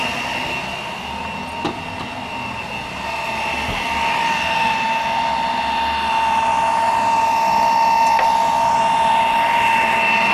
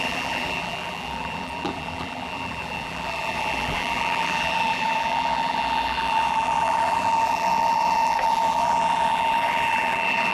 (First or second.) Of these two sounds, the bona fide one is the first